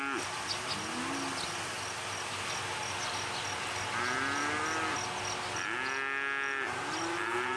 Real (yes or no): yes